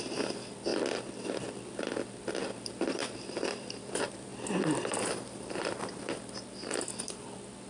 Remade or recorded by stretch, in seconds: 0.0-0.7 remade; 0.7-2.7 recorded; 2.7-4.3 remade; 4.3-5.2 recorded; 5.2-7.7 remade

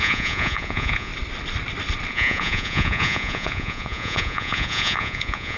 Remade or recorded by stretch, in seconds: 0.0-1.1 remade; 1.1-2.1 recorded; 2.1-5.6 remade

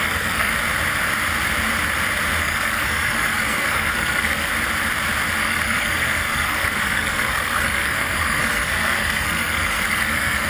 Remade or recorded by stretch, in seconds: 0.0-0.5 remade; 0.5-2.4 recorded; 2.4-4.5 remade; 4.5-5.4 recorded; 5.4-10.5 remade

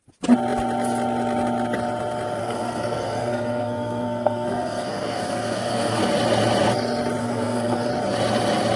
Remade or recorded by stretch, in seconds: 0.0-2.4 recorded; 2.4-6.1 remade; 6.1-7.2 recorded; 7.2-7.9 remade; 7.9-8.8 recorded

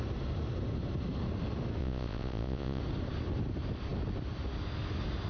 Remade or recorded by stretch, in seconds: 0.0-1.8 recorded; 1.8-2.8 remade; 2.8-5.3 recorded

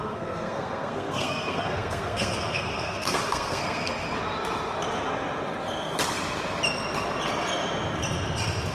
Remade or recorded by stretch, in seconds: 0.0-3.9 remade; 3.9-8.7 recorded

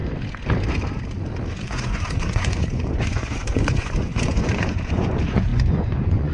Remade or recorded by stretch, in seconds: 0.0-1.5 recorded; 1.5-6.3 remade

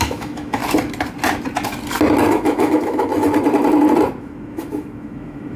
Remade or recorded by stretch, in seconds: 0.0-0.6 remade; 0.6-2.3 recorded; 2.3-3.1 remade; 3.1-4.2 recorded; 4.2-5.6 remade